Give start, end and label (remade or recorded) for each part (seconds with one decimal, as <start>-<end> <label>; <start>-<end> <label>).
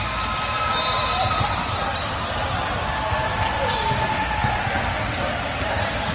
0.0-6.1 recorded